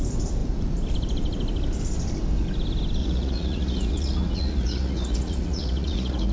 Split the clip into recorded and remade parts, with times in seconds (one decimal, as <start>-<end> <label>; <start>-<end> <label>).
0.0-3.0 recorded; 3.0-6.3 remade